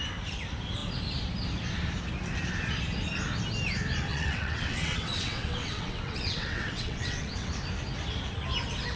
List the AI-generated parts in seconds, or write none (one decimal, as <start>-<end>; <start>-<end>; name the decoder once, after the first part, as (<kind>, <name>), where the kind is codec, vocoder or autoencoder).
4.1-7.5 (vocoder, WaveNeXt)